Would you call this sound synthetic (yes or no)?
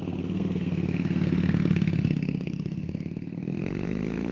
yes